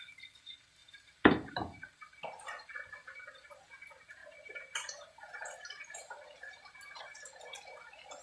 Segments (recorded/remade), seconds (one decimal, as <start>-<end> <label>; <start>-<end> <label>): 0.0-8.2 recorded